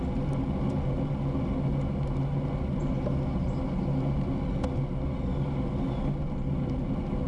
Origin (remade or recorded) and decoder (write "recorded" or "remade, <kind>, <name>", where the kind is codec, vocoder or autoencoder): recorded